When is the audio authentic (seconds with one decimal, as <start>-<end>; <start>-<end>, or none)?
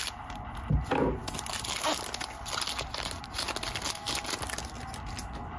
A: 0.0-5.6